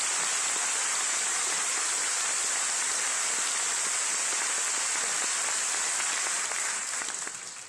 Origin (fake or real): real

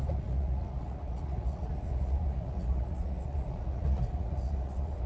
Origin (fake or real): fake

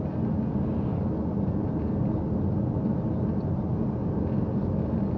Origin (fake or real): real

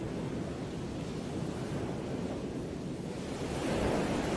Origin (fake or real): real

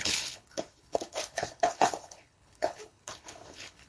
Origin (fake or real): fake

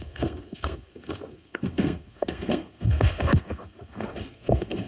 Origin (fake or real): fake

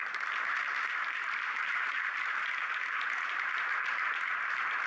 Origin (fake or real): real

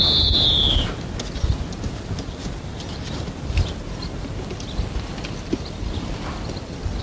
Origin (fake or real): real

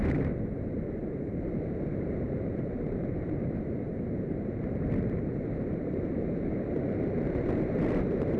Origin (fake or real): fake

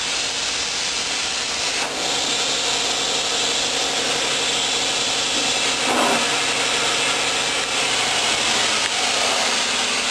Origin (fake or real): real